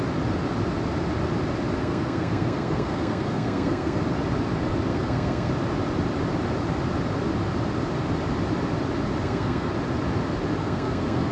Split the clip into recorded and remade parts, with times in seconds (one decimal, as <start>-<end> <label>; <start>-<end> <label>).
0.0-1.8 recorded; 1.8-4.0 remade; 4.0-4.9 recorded; 4.9-5.5 remade; 5.5-9.2 recorded; 9.2-9.7 remade; 9.7-10.6 recorded; 10.6-11.3 remade